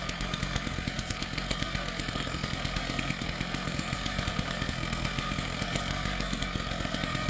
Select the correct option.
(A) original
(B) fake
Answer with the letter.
B